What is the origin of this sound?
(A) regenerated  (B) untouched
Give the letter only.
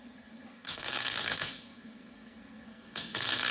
A